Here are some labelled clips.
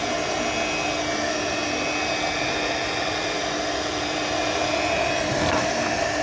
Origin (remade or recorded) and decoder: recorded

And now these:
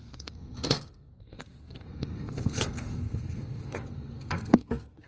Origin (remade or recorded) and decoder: remade, codec, SNAC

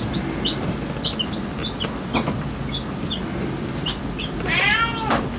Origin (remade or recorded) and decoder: recorded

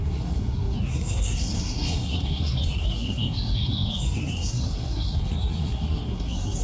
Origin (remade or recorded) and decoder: remade, codec, SNAC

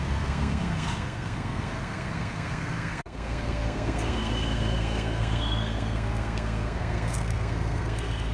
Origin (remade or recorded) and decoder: remade, codec, SNAC